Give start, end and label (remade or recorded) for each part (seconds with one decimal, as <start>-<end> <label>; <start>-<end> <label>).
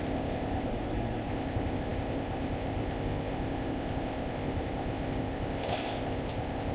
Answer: 0.0-0.7 remade; 0.7-1.3 recorded; 1.3-6.7 remade